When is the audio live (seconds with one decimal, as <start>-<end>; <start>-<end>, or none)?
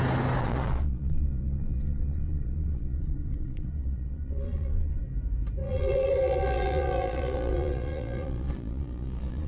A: 0.0-0.4; 5.0-5.6